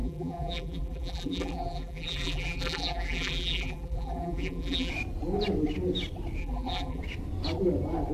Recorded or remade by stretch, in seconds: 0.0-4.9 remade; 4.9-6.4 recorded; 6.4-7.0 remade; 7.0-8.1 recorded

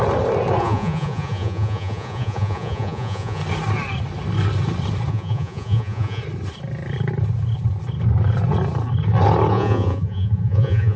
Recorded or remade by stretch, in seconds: 0.0-0.6 recorded; 0.6-3.4 remade; 3.4-5.1 recorded; 5.1-6.2 remade; 6.2-9.5 recorded; 9.5-11.0 remade

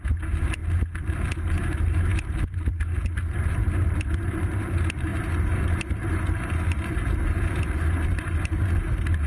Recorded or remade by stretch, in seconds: 0.0-0.6 remade; 0.6-1.3 recorded; 1.3-9.3 remade

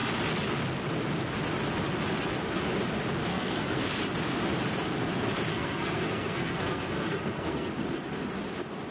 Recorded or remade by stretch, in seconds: 0.0-3.3 recorded; 3.3-3.8 remade; 3.8-5.5 recorded; 5.5-7.7 remade; 7.7-8.9 recorded